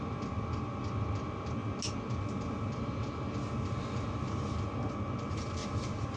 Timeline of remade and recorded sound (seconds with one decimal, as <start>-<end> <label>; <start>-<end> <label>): 0.0-6.2 recorded